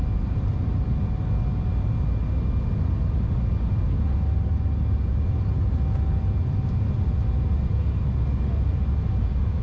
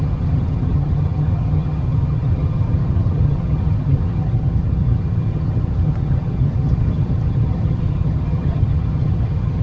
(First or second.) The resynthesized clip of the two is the second